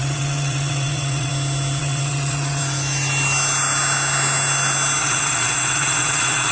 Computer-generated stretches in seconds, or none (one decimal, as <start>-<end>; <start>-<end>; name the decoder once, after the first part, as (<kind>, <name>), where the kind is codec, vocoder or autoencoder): 0.0-1.3 (vocoder, WaveNeXt); 1.8-2.6; 5.0-6.5